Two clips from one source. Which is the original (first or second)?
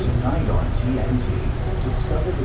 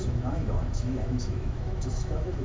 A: first